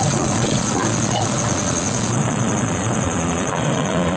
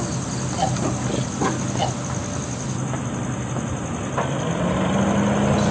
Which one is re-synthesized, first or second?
first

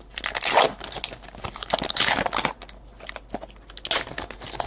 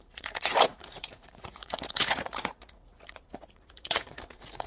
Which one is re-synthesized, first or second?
second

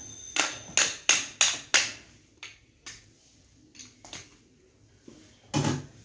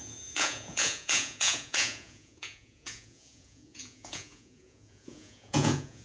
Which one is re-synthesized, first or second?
second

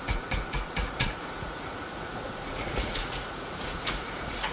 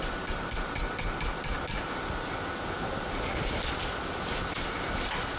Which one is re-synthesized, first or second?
first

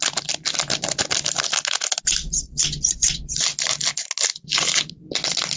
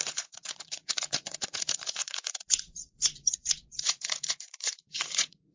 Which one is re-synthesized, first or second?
second